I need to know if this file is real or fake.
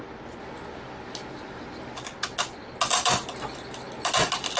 real